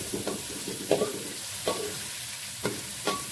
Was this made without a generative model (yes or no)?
yes